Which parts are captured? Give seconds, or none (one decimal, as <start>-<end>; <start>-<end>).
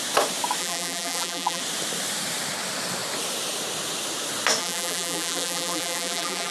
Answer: 0.0-0.6; 1.6-4.6